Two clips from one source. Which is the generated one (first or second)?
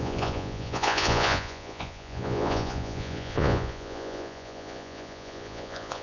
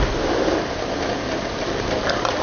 first